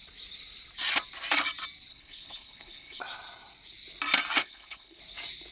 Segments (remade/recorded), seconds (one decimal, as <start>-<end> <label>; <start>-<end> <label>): 0.0-1.9 recorded; 1.9-3.0 remade; 3.0-4.4 recorded; 4.4-5.0 remade; 5.0-5.5 recorded